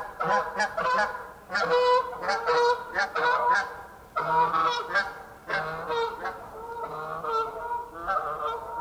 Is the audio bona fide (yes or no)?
yes